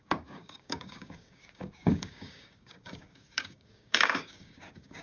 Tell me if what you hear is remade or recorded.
remade